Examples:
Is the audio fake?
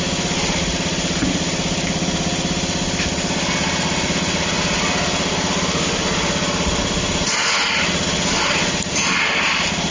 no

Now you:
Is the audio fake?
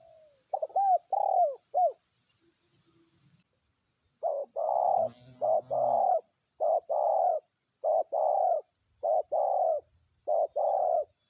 no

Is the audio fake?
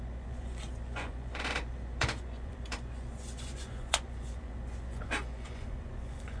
yes